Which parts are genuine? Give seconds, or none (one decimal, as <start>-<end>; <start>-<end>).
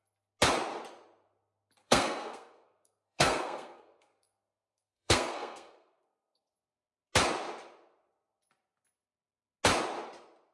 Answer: 0.0-1.8; 6.5-10.5